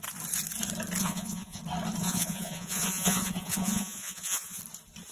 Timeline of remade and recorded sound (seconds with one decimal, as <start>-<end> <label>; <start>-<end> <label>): 0.0-1.0 recorded; 1.0-1.6 remade; 1.6-2.0 recorded; 2.0-4.6 remade; 4.6-5.1 recorded